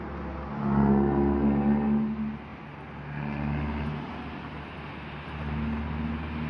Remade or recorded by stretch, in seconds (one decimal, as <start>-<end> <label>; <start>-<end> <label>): 0.0-6.5 recorded